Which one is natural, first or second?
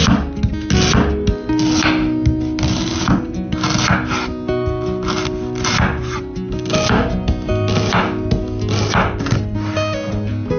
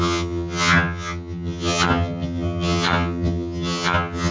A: first